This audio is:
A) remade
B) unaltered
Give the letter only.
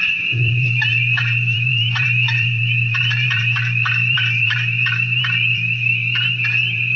A